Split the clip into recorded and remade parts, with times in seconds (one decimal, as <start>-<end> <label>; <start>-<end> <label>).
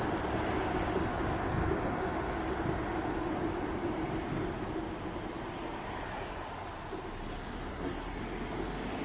0.0-7.7 recorded; 7.7-8.2 remade; 8.2-9.0 recorded